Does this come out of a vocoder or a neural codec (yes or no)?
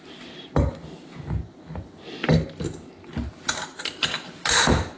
no